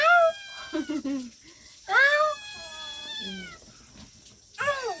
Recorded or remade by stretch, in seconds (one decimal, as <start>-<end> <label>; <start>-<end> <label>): 0.0-5.0 recorded